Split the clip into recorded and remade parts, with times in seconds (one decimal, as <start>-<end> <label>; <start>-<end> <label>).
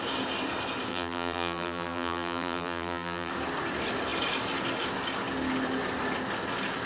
0.0-0.9 recorded; 0.9-3.3 remade; 3.3-6.9 recorded